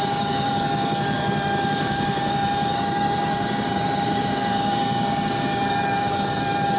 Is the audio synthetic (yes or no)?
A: yes